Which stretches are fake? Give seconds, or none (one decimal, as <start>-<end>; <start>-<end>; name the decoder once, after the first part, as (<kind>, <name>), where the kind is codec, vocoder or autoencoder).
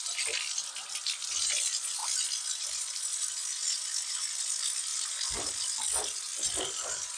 none